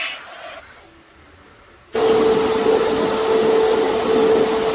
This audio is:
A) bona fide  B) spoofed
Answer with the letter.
A